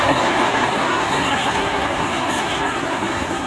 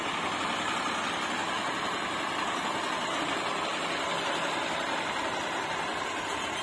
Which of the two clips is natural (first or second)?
second